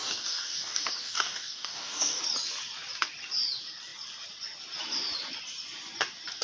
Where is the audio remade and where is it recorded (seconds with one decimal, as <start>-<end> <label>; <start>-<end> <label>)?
0.0-2.2 remade; 2.2-6.4 recorded